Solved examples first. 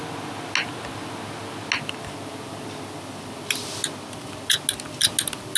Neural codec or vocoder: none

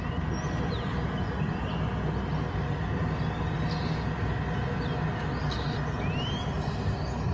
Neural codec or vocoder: none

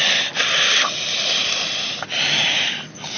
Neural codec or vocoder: none